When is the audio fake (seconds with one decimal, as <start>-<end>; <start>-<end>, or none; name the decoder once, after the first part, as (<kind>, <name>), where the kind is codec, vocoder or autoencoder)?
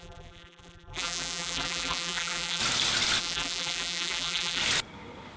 0.0-2.6 (vocoder, BigVGAN v2); 3.2-4.6